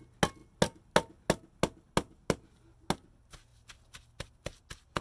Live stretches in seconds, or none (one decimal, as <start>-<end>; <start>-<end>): 0.0-5.0